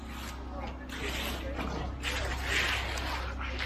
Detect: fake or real real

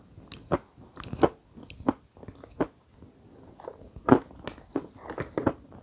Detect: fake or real real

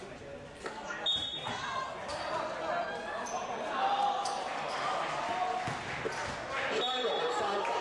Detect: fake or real real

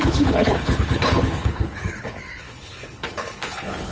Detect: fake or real fake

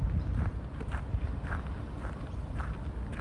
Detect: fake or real real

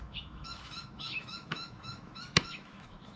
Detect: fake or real fake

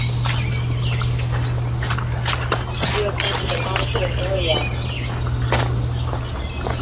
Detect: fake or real real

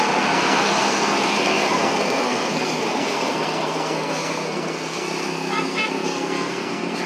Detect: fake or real fake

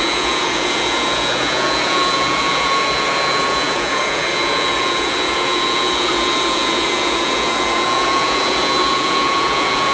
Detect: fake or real fake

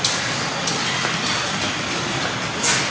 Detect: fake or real real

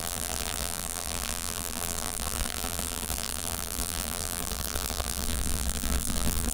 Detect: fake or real fake